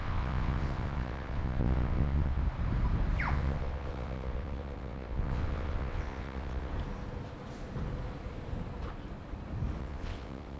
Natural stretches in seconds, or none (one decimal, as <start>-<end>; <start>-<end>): 2.4-3.3; 6.7-9.8